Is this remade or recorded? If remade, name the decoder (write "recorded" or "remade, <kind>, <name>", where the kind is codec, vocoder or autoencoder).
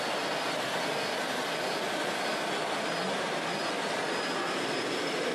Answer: recorded